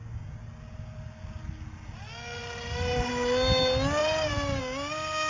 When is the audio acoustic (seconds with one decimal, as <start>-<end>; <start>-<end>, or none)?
0.0-2.4; 3.1-4.0; 4.6-5.3